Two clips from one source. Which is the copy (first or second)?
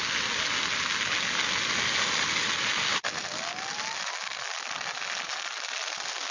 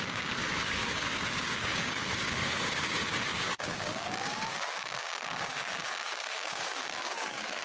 second